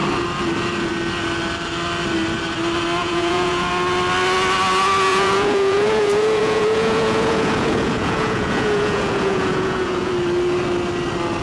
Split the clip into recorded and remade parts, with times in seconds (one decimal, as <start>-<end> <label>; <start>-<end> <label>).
0.0-3.0 recorded; 3.0-3.7 remade; 3.7-5.1 recorded; 5.1-10.1 remade; 10.1-11.4 recorded